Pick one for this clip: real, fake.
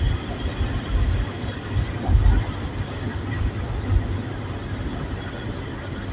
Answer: real